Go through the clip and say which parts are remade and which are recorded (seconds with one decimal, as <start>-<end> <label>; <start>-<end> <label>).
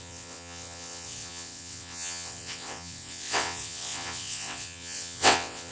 0.0-5.7 remade